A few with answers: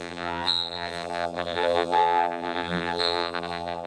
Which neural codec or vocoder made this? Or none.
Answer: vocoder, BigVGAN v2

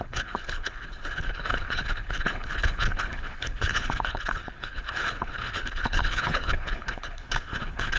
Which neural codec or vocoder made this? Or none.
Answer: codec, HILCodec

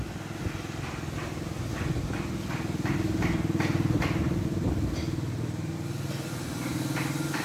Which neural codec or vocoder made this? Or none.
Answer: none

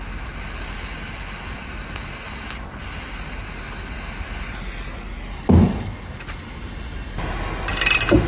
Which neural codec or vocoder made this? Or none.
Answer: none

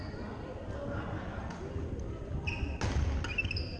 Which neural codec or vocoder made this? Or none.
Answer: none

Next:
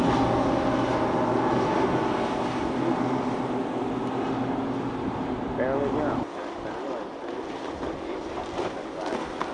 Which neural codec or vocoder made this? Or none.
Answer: none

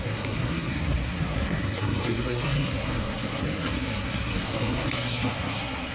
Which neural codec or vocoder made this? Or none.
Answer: codec, SNAC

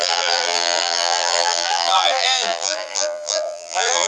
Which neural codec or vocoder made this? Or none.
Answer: vocoder, BigVGAN v2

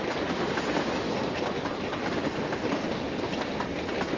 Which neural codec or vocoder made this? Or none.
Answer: none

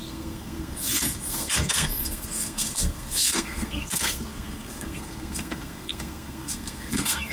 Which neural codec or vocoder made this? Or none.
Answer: codec, SNAC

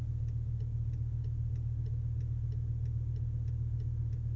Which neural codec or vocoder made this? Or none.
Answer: none